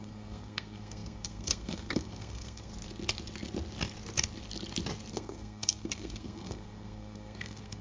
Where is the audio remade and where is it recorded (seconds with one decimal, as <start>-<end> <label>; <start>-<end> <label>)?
0.0-2.7 remade; 2.7-5.1 recorded; 5.1-7.8 remade

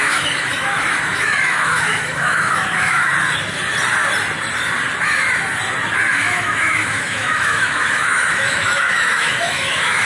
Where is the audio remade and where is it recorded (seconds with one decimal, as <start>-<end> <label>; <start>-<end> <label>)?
0.0-3.1 remade; 3.1-6.1 recorded; 6.1-10.1 remade